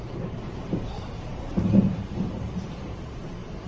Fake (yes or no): yes